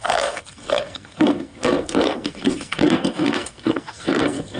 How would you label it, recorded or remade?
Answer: remade